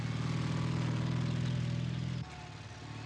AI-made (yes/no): no